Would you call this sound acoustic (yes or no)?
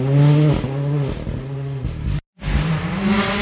yes